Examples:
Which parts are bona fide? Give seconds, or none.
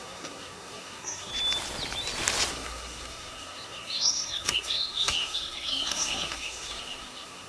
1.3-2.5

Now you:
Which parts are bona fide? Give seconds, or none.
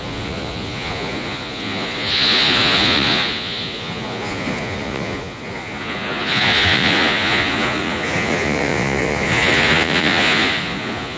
none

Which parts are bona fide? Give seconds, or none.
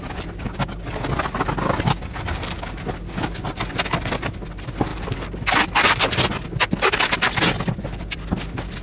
0.0-8.8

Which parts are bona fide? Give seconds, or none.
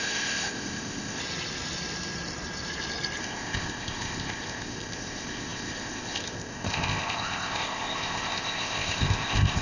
1.2-3.2